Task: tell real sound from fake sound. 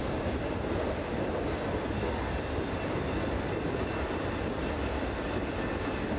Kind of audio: real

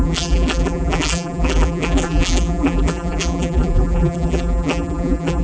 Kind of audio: fake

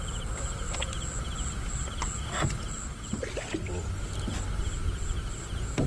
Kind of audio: real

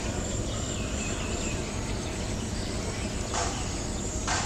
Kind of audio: fake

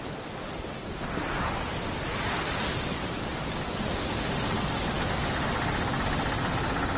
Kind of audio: real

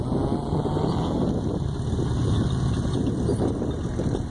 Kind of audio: real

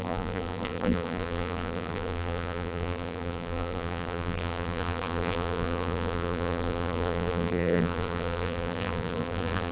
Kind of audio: fake